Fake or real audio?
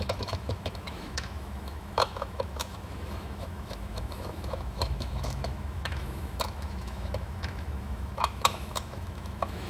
fake